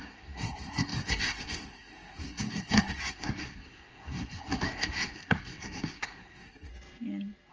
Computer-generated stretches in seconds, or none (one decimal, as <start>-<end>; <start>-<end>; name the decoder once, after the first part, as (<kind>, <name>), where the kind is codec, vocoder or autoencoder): 0.0-6.7 (codec, SNAC)